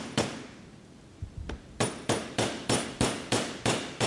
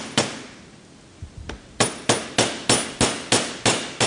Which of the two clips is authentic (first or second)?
second